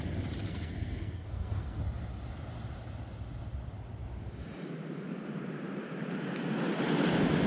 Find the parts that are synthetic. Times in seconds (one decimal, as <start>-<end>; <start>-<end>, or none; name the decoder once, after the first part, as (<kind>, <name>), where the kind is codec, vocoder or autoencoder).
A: 0.5-1.8 (codec, SNAC)